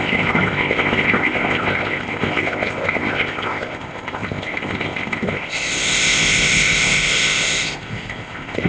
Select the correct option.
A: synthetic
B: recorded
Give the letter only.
A